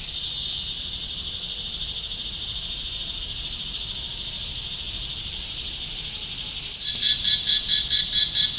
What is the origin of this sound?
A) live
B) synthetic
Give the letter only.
A